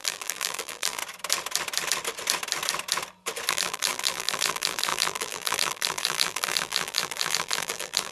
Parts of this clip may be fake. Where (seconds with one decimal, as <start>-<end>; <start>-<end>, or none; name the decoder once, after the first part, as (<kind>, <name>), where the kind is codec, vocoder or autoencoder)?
0.0-1.0 (vocoder, BigVGAN v2); 3.5-8.1